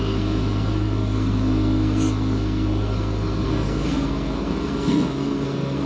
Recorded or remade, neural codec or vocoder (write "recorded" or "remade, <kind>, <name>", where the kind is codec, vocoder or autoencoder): remade, codec, SNAC